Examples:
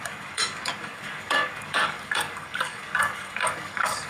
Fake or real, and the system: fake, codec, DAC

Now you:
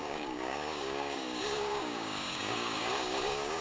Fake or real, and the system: fake, codec, DAC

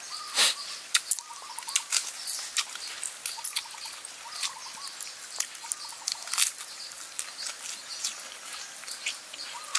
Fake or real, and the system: real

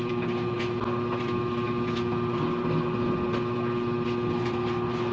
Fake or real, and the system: real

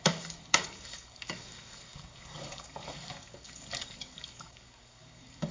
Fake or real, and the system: fake, codec, DAC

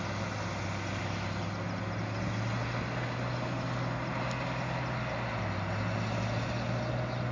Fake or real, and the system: real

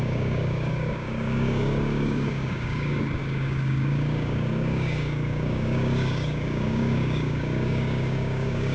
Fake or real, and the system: fake, codec, DAC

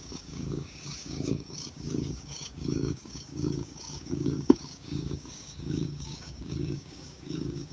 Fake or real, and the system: fake, codec, DAC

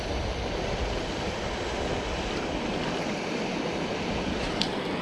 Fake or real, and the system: real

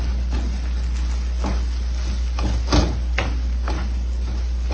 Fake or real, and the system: real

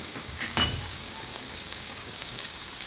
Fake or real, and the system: fake, codec, DAC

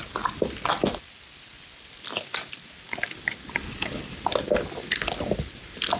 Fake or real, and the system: real